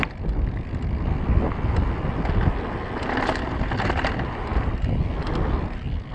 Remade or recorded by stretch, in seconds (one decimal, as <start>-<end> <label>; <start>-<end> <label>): 0.0-6.1 recorded

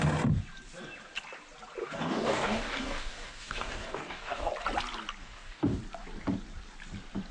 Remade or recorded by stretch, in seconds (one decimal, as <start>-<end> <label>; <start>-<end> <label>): 0.0-1.8 recorded; 1.8-4.5 remade; 4.5-5.2 recorded; 5.2-5.8 remade; 5.8-7.3 recorded

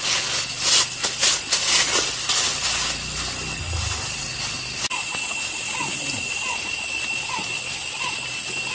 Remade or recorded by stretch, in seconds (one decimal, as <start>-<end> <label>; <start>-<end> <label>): 0.0-8.7 recorded